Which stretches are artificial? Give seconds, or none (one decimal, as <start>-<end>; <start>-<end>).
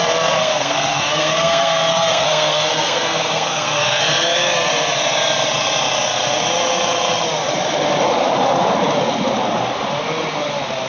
0.4-4.0